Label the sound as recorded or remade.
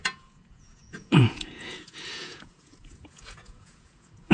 remade